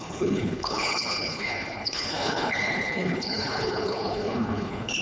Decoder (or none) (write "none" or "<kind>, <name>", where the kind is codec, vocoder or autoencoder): codec, HILCodec